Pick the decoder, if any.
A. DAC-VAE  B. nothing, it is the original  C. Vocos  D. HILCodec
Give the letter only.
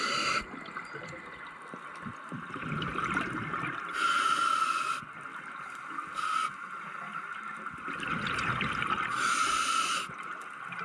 B